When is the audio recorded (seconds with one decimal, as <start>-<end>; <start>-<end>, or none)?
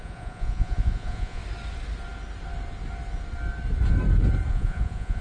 1.4-4.5